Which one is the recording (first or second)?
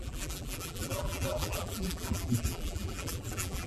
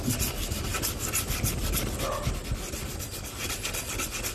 second